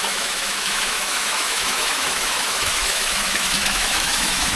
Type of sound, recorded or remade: remade